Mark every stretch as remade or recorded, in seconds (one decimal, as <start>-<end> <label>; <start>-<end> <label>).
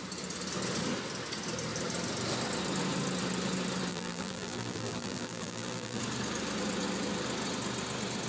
0.0-3.9 recorded; 3.9-6.0 remade; 6.0-8.3 recorded